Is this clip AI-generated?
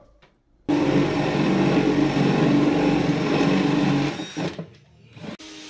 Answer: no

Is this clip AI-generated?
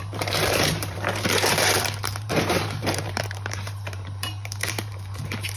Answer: yes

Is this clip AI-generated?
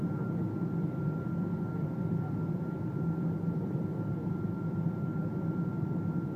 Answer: no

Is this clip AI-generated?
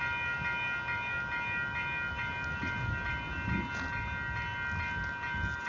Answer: no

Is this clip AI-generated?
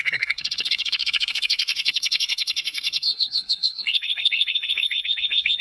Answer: yes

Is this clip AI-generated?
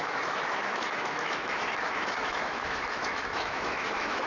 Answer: yes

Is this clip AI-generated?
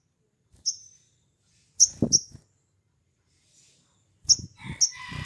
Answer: no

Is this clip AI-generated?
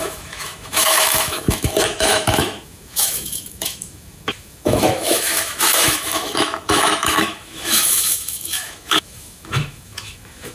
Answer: yes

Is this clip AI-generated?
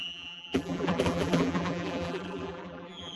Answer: yes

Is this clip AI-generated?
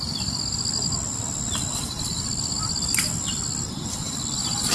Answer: no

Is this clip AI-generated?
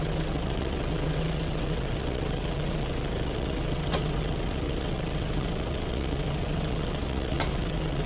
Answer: yes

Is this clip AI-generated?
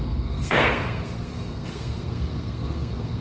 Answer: yes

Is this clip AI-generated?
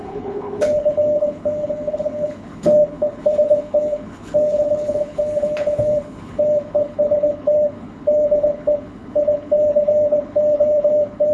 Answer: yes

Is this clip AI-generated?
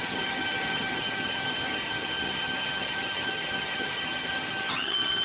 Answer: yes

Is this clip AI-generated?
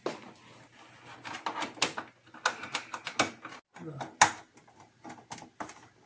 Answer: no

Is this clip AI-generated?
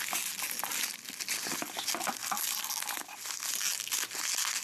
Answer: no